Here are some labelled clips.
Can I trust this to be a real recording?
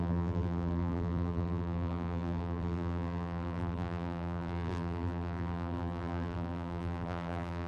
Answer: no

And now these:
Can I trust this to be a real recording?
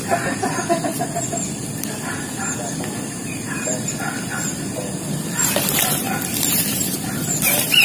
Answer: no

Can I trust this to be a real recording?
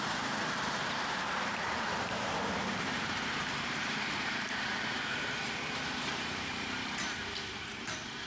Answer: no